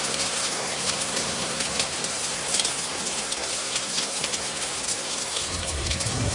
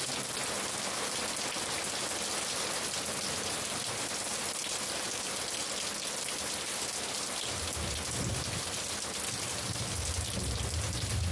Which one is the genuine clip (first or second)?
second